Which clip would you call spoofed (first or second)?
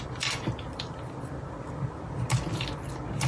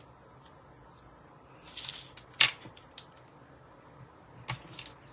first